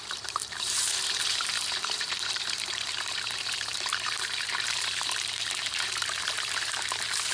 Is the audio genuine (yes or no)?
no